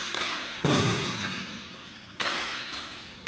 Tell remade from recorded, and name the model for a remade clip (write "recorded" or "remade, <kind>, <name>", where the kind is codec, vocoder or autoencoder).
remade, codec, SNAC